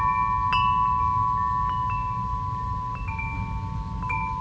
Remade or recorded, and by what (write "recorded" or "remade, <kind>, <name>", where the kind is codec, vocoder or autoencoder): recorded